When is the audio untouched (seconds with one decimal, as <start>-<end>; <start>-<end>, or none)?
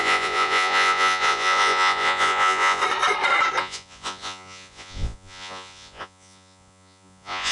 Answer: 2.8-3.6